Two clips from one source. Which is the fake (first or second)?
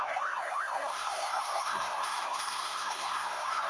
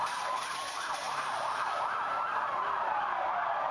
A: first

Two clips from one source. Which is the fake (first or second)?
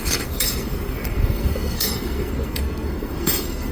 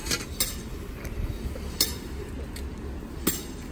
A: first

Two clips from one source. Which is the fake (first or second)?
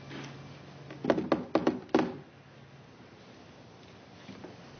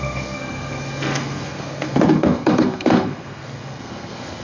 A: second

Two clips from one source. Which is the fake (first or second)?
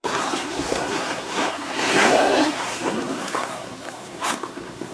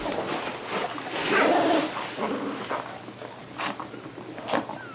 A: first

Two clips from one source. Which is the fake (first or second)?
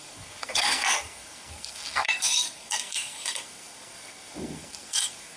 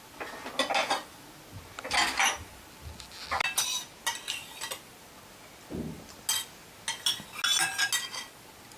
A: first